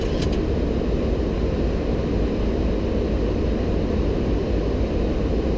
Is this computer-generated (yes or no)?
no